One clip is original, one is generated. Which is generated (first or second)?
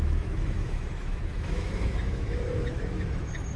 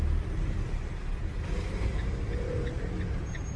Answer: first